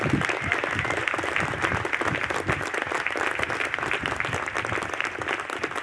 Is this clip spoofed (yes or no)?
no